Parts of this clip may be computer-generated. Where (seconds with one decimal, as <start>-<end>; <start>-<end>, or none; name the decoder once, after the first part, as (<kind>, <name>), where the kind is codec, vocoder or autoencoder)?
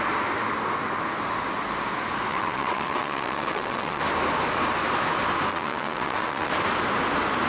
2.3-4.0 (vocoder, WaveNeXt); 5.5-6.5